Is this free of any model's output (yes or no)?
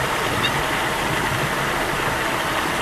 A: yes